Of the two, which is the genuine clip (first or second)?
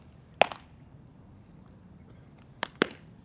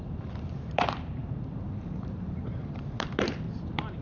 first